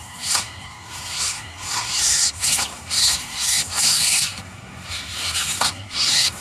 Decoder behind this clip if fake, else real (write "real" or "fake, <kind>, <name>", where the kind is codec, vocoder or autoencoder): fake, codec, SNAC